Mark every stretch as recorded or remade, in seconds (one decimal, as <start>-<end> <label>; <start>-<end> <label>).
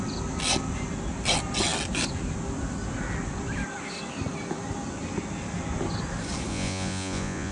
0.0-6.5 recorded; 6.5-7.5 remade